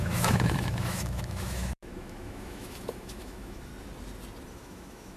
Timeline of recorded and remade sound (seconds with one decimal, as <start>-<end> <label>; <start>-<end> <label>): 0.0-3.7 remade; 3.7-4.5 recorded; 4.5-5.2 remade